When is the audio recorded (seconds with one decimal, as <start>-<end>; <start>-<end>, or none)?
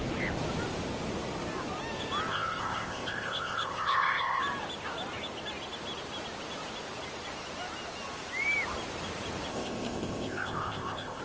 0.0-2.3; 4.4-9.5